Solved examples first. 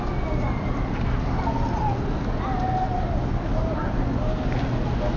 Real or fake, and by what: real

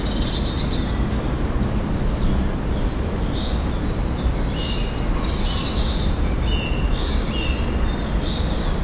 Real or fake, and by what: real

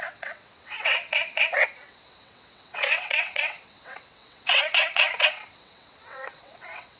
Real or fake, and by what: fake, vocoder, WaveNeXt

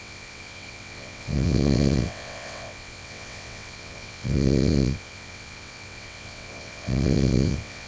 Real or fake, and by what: fake, vocoder, WaveNeXt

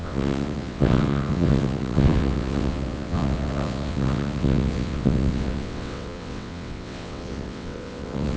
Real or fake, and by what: fake, vocoder, WaveNeXt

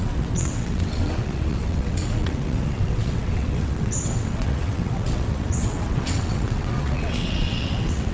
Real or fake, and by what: fake, vocoder, WaveNeXt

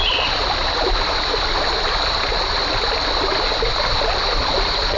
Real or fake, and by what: real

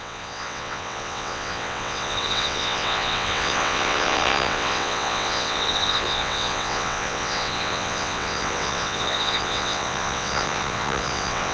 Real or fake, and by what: fake, vocoder, WaveNeXt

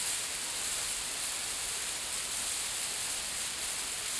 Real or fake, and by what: real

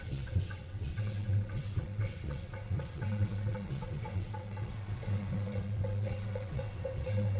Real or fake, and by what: fake, vocoder, WaveNeXt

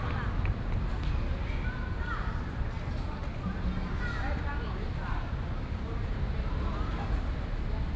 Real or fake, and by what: real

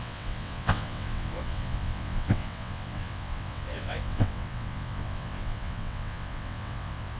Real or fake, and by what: fake, vocoder, WaveNeXt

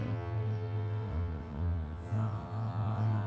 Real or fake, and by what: fake, vocoder, WaveNeXt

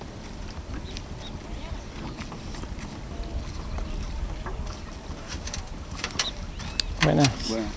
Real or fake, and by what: real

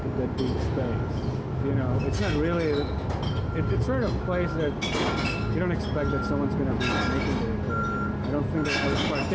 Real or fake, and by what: real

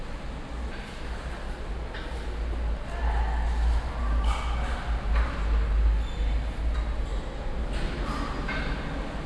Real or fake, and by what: real